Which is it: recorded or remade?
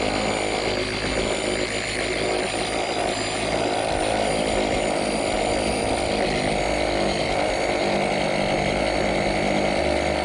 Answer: recorded